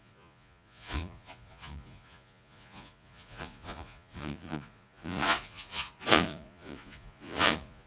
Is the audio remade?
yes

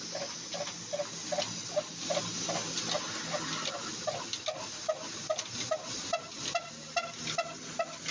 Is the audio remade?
no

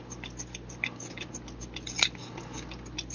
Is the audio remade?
no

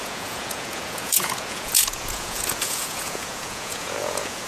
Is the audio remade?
yes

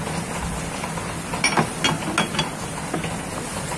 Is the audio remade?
no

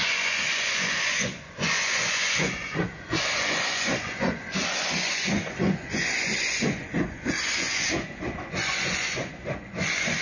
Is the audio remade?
yes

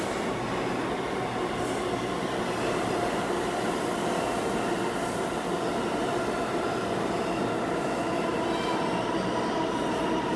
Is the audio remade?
no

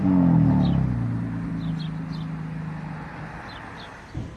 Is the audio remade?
no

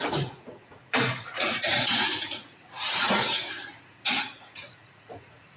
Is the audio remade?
yes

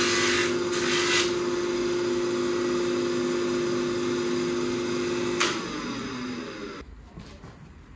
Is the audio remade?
no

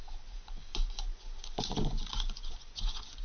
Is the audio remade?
yes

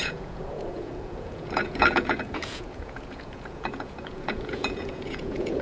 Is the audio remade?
yes